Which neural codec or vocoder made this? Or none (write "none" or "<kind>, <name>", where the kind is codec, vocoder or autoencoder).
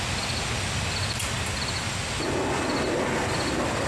none